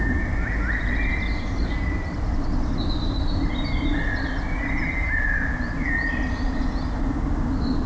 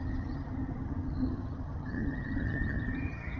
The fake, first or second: second